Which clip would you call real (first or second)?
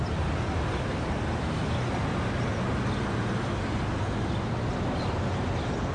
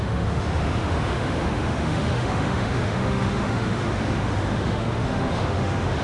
first